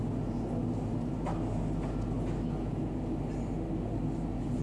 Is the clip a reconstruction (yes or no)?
no